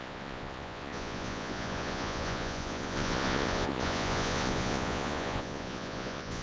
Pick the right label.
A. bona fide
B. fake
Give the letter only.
B